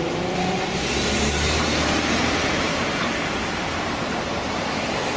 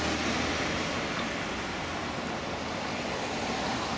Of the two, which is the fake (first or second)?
first